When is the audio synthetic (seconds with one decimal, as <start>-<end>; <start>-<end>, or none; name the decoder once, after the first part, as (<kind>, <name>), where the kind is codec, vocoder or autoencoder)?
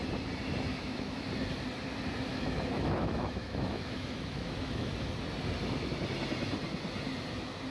0.7-1.3 (autoencoder, DAC-VAE); 2.3-4.9